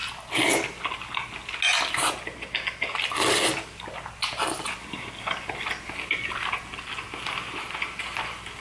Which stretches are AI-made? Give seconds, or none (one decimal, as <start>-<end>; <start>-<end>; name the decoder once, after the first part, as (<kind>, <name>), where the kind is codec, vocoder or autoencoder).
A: none